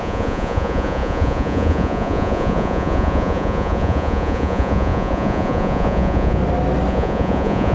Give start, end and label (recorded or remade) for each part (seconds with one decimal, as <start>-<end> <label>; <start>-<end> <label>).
0.0-6.4 remade; 6.4-6.9 recorded; 6.9-7.7 remade